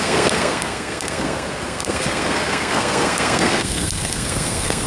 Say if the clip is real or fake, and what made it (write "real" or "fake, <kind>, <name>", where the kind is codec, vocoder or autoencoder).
fake, codec, SNAC